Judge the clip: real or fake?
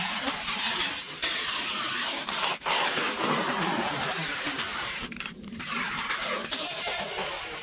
fake